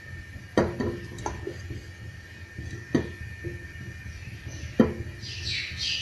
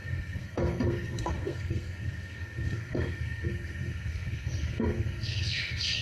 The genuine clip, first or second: first